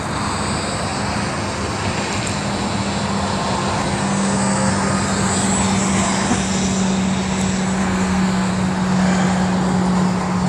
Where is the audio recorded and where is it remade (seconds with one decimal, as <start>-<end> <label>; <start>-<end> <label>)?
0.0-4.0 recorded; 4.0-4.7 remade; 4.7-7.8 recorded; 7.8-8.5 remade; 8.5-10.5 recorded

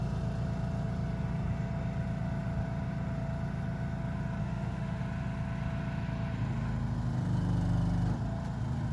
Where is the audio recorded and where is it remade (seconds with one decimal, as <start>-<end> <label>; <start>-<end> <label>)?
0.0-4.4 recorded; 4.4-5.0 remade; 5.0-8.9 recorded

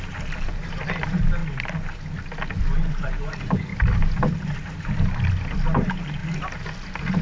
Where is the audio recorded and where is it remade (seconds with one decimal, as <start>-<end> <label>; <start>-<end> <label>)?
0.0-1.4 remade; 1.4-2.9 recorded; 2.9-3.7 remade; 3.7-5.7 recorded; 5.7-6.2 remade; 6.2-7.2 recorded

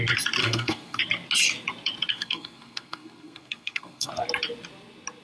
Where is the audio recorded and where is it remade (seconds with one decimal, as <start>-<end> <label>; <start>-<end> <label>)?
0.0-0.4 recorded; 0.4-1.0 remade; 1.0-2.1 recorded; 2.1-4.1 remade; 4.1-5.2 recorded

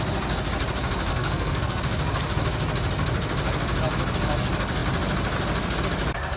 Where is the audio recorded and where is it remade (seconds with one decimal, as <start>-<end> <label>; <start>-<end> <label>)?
0.0-1.1 recorded; 1.1-1.8 remade; 1.8-6.4 recorded